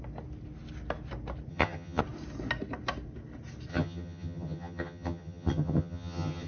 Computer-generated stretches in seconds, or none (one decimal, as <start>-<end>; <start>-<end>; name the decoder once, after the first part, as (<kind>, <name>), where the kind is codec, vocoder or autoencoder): 1.5-2.0 (vocoder, HiFi-GAN); 3.7-6.5